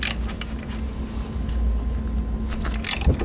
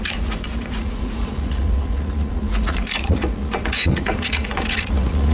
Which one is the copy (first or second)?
second